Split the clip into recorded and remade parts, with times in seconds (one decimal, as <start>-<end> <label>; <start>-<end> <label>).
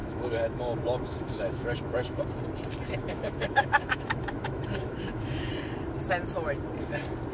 0.0-2.2 remade; 2.2-3.0 recorded; 3.0-5.5 remade; 5.5-7.3 recorded